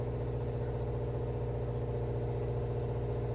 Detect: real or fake real